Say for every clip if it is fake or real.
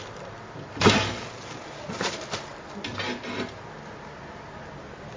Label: real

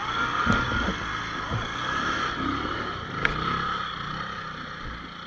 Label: real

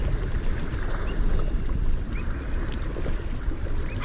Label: real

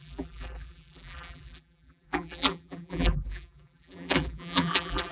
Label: fake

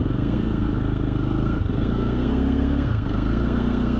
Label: fake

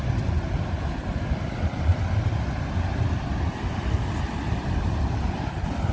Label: real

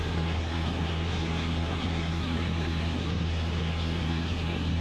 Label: fake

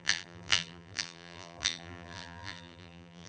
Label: fake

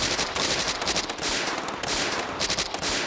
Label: real